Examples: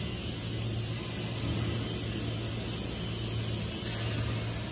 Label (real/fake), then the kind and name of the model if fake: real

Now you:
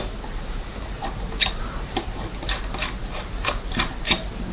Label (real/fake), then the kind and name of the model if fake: real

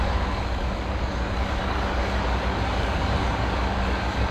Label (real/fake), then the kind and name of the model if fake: fake, codec, DAC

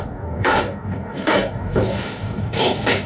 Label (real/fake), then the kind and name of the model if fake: fake, codec, DAC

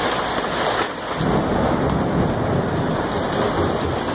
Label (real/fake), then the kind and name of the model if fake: real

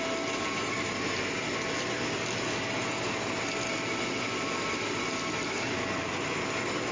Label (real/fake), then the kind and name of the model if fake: real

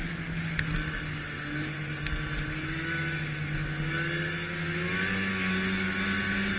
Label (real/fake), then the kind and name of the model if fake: real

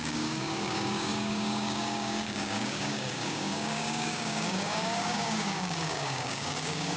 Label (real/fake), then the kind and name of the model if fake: fake, codec, DAC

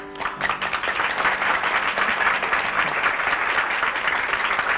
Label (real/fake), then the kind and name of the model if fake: real